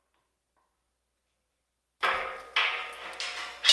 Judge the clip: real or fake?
real